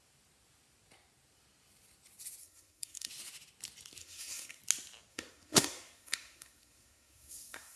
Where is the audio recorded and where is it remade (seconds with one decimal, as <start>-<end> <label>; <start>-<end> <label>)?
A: 0.0-2.4 recorded; 2.4-3.1 remade; 3.1-4.0 recorded; 4.0-4.6 remade; 4.6-5.1 recorded; 5.1-7.8 remade